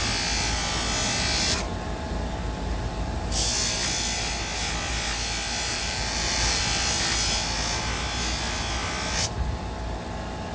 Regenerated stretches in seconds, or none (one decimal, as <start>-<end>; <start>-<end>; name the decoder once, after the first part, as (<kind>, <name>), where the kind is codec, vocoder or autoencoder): 5.7-6.6 (vocoder, BigVGAN v2)